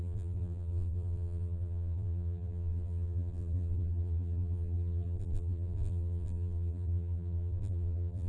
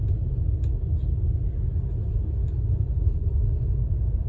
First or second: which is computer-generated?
first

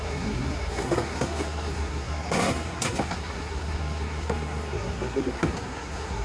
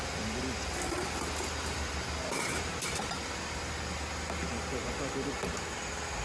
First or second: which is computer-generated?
first